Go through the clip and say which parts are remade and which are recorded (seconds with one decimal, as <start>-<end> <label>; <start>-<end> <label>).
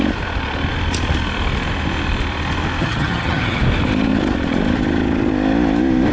0.0-2.8 recorded; 2.8-3.6 remade; 3.6-6.1 recorded